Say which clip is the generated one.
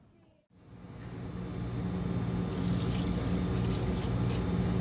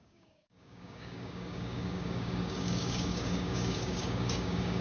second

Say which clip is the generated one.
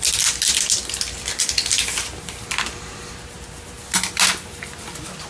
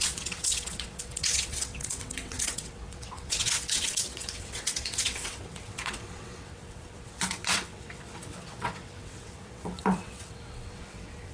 second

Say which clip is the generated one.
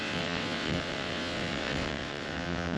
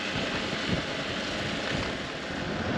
first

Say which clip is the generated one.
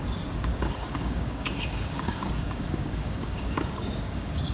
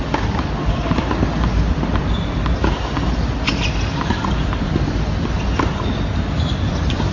first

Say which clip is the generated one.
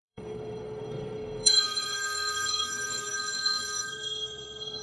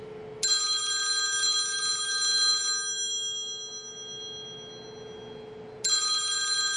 first